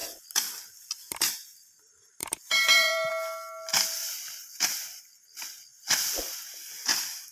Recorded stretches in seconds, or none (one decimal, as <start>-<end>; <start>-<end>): 0.0-2.2; 3.1-7.3